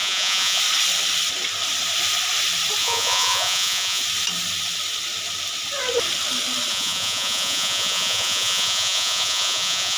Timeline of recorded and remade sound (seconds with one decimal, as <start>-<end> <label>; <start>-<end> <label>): 0.0-0.6 remade; 0.6-2.8 recorded; 2.8-4.0 remade; 4.0-6.7 recorded; 6.7-10.0 remade